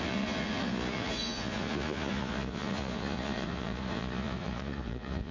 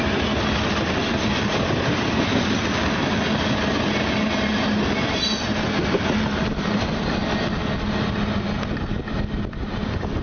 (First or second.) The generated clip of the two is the first